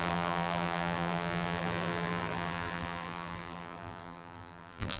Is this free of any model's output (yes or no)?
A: no